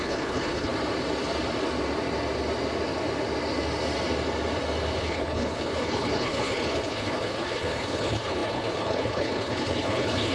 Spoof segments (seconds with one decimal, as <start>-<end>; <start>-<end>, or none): 0.0-0.7; 5.0-10.3